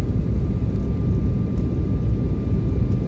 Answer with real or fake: real